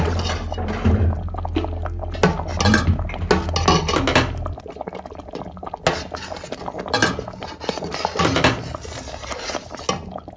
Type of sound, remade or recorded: recorded